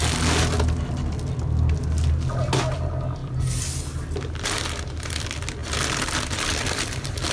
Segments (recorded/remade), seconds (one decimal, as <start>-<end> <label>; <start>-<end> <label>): 0.0-7.3 recorded